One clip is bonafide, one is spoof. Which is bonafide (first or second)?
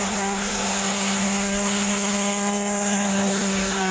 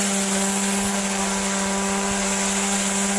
second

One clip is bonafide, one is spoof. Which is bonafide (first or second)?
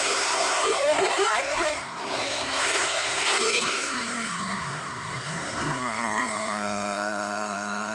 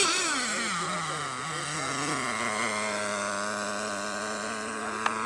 second